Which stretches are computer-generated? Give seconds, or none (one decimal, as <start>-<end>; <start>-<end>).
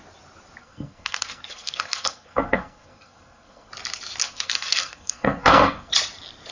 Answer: 0.6-3.7; 4.2-5.9